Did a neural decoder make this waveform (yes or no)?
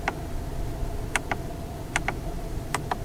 yes